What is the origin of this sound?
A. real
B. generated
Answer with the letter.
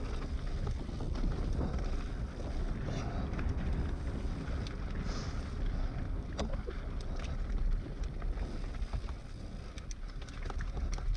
A